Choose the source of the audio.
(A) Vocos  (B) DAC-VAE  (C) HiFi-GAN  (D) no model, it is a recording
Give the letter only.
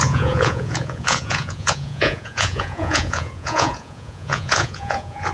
A